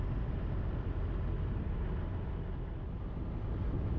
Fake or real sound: real